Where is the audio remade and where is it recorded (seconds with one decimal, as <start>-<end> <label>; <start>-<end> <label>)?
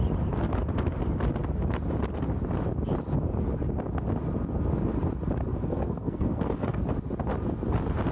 0.0-5.5 recorded; 5.5-6.8 remade; 6.8-8.1 recorded